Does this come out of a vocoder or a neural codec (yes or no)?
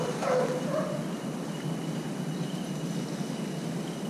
no